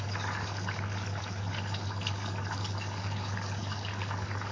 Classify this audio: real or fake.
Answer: fake